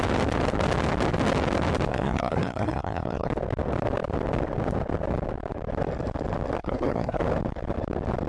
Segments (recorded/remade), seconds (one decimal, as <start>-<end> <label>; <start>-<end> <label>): 0.0-1.9 recorded; 1.9-3.3 remade; 3.3-6.6 recorded; 6.6-7.2 remade; 7.2-8.3 recorded